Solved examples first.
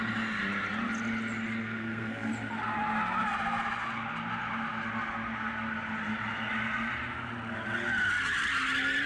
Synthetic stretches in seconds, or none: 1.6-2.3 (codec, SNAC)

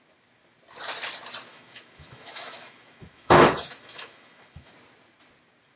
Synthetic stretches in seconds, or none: 1.5-4.7 (autoencoder, DAC-VAE)

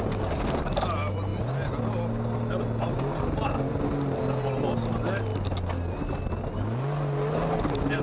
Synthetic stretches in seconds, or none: none